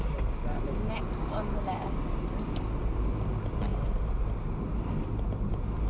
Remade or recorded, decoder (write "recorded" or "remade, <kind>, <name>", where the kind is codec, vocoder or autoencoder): recorded